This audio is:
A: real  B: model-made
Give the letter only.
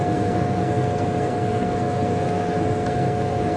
B